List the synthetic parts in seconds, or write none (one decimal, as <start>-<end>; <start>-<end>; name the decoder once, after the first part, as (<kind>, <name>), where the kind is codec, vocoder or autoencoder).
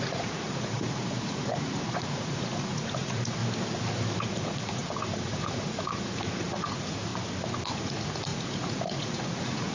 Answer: 0.0-3.4 (vocoder, Vocos); 4.2-7.1; 7.7-9.7